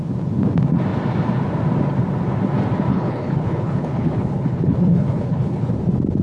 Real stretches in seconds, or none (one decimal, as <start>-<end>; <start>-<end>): 0.0-2.9; 5.7-6.2